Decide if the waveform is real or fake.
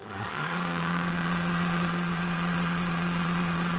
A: fake